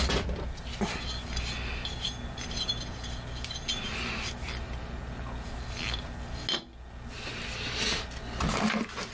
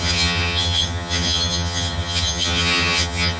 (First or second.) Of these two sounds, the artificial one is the second